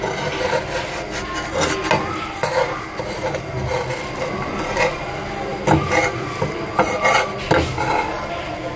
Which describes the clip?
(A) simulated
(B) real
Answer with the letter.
B